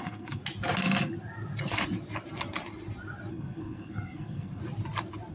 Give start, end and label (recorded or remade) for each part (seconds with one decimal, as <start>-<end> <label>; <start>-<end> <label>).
0.0-0.4 remade; 0.4-3.3 recorded; 3.3-4.6 remade; 4.6-5.3 recorded